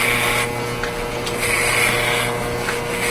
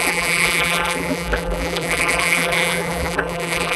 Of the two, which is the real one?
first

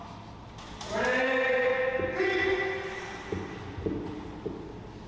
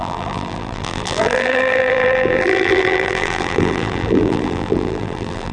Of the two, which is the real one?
first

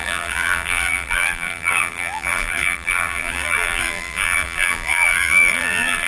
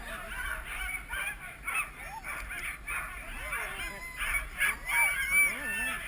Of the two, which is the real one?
second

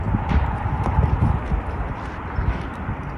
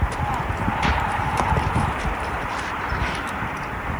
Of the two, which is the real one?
first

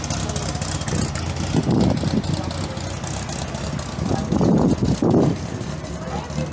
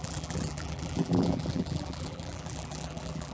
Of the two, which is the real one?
first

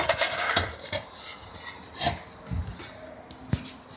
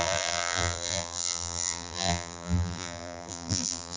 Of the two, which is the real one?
first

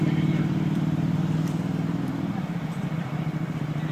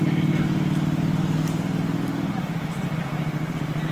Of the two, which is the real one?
second